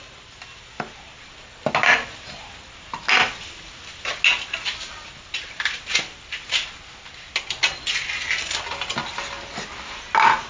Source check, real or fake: real